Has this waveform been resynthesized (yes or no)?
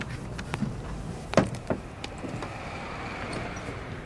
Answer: yes